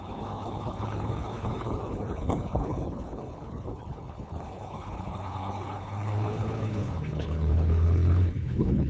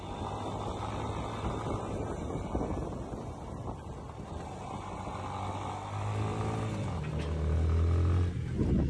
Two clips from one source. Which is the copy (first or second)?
first